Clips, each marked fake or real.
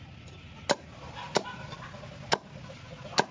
real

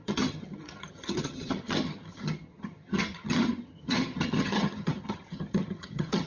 fake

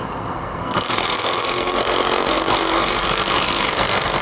fake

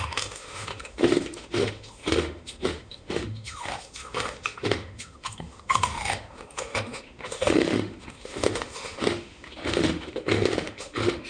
fake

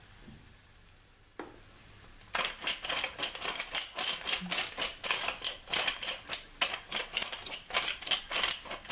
real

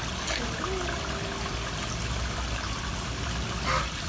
real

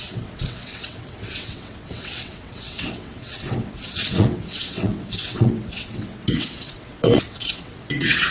fake